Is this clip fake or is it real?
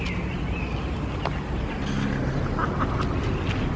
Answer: real